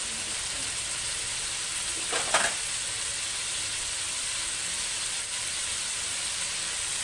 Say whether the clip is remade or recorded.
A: recorded